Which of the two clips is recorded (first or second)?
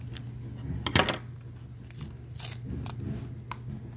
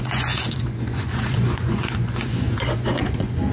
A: first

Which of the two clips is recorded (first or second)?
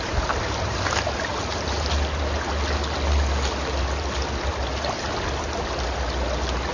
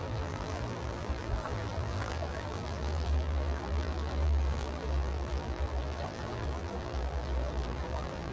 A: first